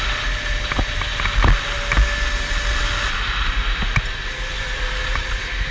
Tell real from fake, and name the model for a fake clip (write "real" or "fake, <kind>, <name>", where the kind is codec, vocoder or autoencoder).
real